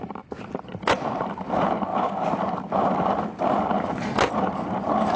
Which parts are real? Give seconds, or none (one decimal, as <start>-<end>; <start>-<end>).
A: 0.0-5.2